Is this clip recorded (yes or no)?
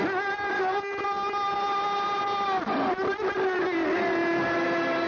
yes